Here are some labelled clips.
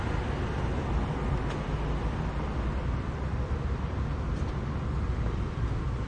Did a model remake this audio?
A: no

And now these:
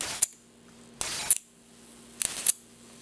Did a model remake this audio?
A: no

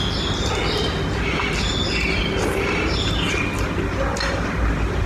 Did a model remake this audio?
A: no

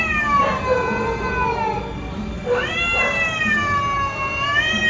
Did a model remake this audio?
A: no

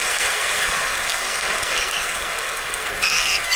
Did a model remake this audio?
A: yes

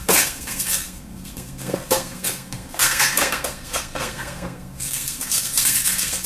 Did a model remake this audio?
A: yes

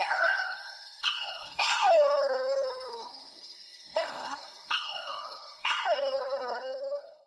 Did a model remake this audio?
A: yes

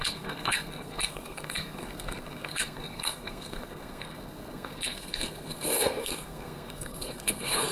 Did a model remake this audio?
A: yes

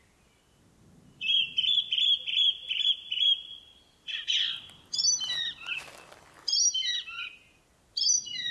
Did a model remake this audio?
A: no